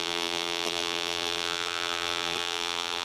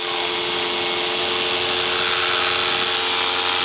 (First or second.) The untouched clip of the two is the second